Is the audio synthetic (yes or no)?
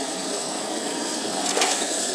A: yes